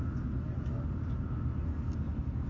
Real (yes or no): yes